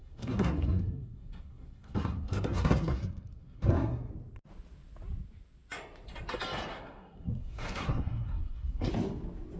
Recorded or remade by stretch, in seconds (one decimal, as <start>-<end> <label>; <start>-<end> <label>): 0.0-4.1 remade; 4.1-6.7 recorded; 6.7-8.9 remade; 8.9-9.6 recorded